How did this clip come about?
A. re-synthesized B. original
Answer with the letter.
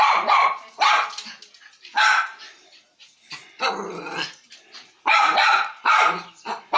B